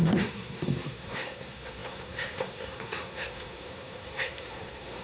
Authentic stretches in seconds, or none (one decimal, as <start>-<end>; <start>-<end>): none

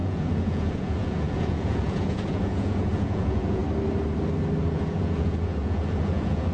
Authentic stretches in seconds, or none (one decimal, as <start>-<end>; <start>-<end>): 3.6-4.6